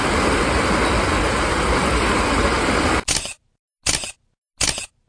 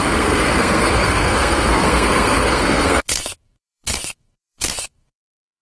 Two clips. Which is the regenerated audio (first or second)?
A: second